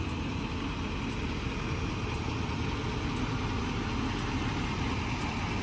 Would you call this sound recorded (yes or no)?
yes